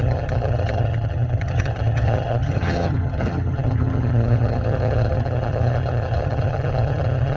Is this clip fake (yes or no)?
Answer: yes